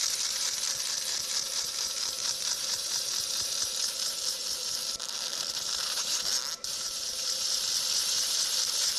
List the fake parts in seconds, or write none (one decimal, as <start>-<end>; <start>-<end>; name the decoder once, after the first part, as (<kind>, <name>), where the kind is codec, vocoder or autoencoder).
0.0-4.4 (vocoder, BigVGAN v2); 5.0-9.0